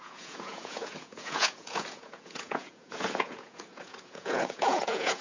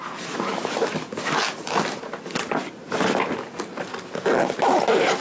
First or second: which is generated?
first